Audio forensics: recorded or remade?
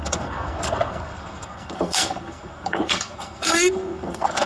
remade